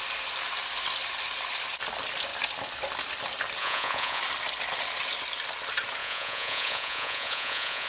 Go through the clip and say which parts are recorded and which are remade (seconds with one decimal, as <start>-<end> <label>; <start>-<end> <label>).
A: 0.0-3.6 recorded; 3.6-4.2 remade; 4.2-6.0 recorded; 6.0-7.9 remade